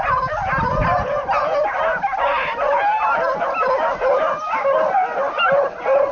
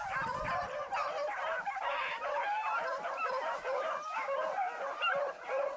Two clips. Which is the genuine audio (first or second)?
first